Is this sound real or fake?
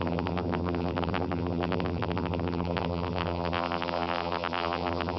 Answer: fake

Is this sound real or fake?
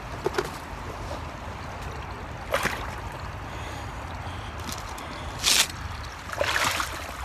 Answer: real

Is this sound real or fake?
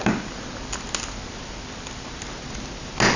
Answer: real